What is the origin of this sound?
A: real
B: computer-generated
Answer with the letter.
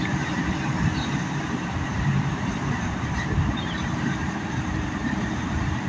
B